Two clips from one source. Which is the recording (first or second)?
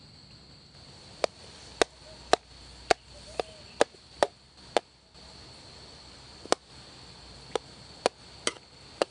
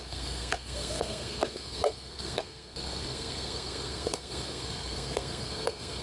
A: first